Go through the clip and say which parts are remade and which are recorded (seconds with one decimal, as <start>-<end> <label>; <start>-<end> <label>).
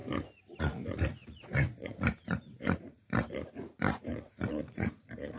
0.0-0.6 recorded; 0.6-5.4 remade